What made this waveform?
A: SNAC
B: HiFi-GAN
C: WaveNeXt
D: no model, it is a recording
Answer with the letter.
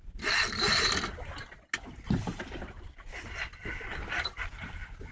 D